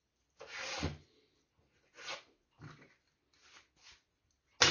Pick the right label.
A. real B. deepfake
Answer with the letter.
A